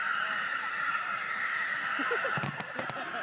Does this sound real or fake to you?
real